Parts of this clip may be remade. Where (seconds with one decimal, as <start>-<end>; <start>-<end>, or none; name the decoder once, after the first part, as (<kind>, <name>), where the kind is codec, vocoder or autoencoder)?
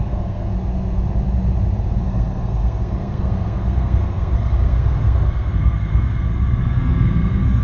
0.0-0.5 (codec, SNAC); 2.0-7.6